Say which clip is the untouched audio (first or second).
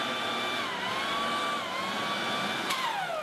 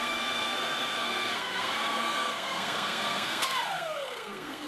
first